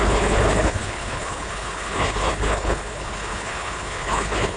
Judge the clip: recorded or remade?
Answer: remade